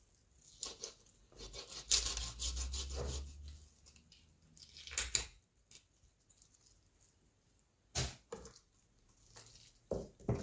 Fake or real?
real